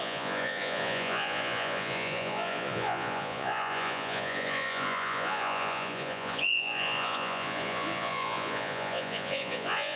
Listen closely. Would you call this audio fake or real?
fake